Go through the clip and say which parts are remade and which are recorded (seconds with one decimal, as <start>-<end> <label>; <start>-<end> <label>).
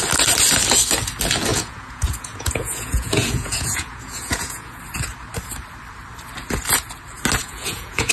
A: 0.0-1.5 recorded; 1.5-4.8 remade; 4.8-7.4 recorded; 7.4-8.1 remade